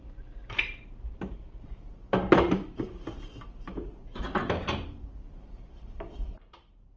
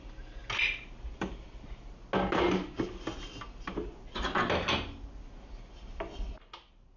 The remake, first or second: first